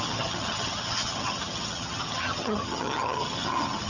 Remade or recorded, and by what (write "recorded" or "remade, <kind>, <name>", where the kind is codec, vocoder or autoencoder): remade, vocoder, HiFi-GAN